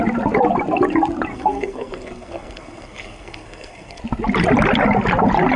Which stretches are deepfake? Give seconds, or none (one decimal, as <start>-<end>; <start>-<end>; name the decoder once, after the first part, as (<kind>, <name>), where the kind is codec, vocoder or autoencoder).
1.3-4.0 (codec, SNAC)